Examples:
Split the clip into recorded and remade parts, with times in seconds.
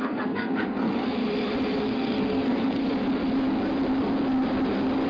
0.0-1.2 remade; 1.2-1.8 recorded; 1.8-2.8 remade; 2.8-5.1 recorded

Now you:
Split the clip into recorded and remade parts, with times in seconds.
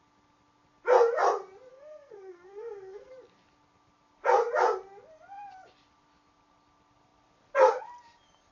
0.0-1.7 recorded; 1.7-3.1 remade; 3.1-8.5 recorded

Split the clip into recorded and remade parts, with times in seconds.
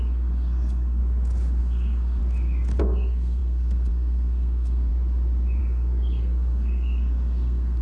0.0-1.0 remade; 1.0-1.6 recorded; 1.6-2.2 remade; 2.2-2.8 recorded; 2.8-4.9 remade; 4.9-5.6 recorded; 5.6-7.8 remade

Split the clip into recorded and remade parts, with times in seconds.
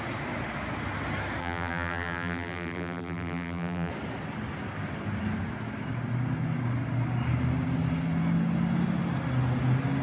0.0-1.4 recorded; 1.4-3.9 remade; 3.9-10.0 recorded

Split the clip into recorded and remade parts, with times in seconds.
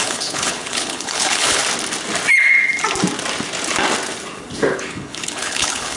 0.0-1.6 remade; 1.6-4.8 recorded; 4.8-6.0 remade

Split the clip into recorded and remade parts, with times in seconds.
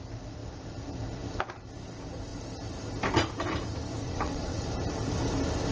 0.0-4.0 recorded; 4.0-4.6 remade; 4.6-5.7 recorded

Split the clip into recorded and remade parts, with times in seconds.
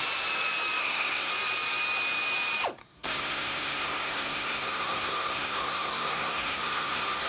0.0-0.8 recorded; 0.8-1.3 remade; 1.3-2.8 recorded; 2.8-7.3 remade